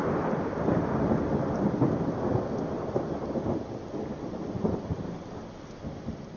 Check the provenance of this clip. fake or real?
real